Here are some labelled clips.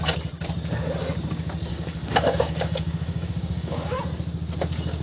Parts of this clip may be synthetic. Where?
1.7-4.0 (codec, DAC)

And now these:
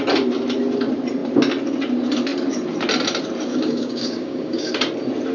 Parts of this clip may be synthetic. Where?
3.5-4.7 (codec, DAC)